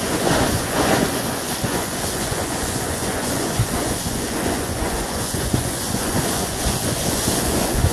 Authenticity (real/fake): fake